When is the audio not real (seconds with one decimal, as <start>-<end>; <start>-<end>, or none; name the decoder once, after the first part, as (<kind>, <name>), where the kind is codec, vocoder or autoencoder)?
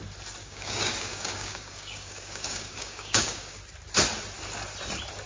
0.4-3.6 (codec, DAC)